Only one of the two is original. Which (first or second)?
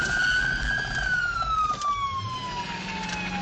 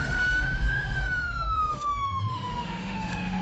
first